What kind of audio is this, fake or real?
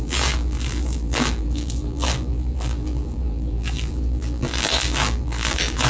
fake